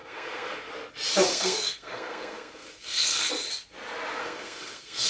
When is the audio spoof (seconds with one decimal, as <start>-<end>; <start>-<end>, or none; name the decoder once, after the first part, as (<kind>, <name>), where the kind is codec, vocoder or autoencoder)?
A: 0.0-0.7 (codec, SNAC); 1.3-3.3; 4.2-5.1